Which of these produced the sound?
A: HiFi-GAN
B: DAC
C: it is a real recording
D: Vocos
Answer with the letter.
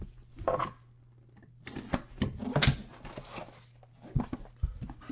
C